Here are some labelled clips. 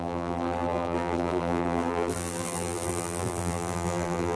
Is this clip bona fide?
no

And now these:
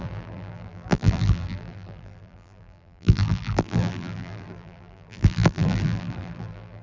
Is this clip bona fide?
no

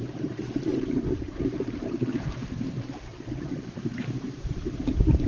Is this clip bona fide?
no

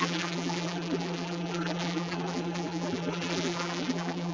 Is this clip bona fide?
no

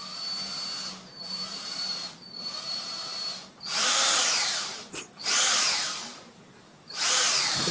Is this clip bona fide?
no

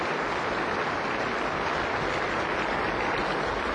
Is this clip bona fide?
yes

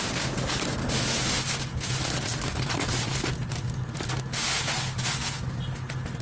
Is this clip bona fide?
yes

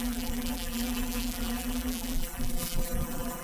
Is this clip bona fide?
no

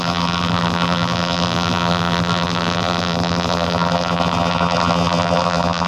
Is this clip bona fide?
no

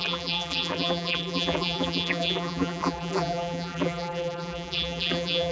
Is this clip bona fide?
no